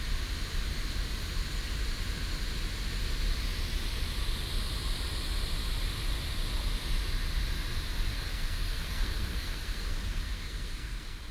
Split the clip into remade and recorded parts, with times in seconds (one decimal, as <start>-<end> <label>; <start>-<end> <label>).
0.0-8.1 recorded; 8.1-11.3 remade